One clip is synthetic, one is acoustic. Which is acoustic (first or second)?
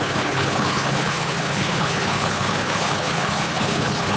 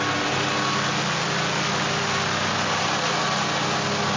second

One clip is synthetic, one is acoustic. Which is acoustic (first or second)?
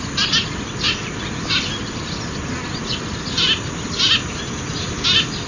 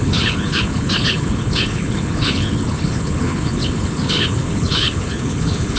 first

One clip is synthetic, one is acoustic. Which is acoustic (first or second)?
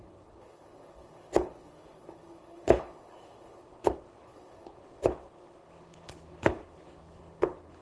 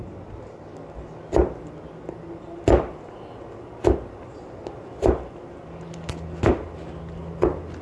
second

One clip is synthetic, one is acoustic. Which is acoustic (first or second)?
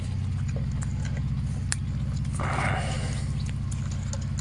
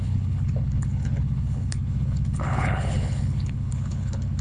first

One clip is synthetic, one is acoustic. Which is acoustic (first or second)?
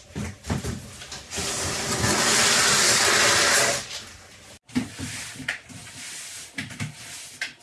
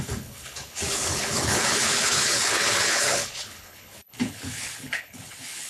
first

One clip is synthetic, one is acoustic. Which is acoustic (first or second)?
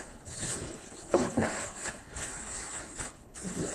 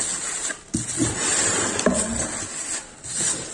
second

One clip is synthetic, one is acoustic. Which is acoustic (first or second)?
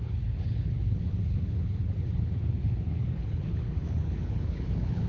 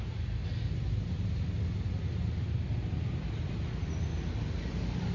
second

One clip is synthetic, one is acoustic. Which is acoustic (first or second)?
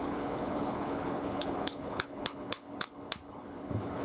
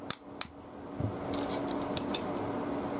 second